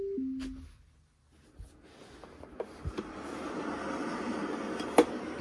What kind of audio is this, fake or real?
real